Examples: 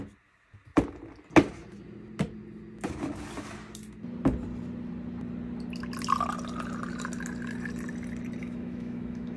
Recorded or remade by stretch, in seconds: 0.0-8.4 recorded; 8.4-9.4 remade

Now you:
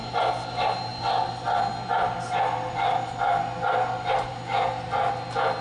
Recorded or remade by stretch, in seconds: 0.0-5.6 recorded

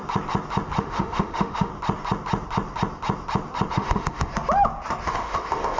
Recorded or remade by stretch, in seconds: 0.0-0.8 recorded; 0.8-1.7 remade; 1.7-3.7 recorded; 3.7-4.3 remade; 4.3-5.1 recorded; 5.1-5.8 remade

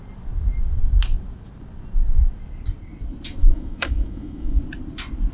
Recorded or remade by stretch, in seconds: 0.0-3.4 recorded; 3.4-4.6 remade; 4.6-5.3 recorded

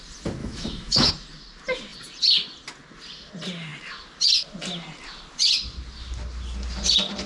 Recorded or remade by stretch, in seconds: 0.0-0.4 recorded; 0.4-1.1 remade; 1.1-7.3 recorded